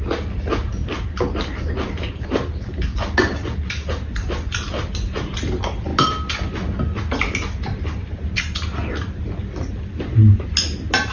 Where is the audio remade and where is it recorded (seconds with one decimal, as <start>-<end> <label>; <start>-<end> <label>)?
0.0-11.1 recorded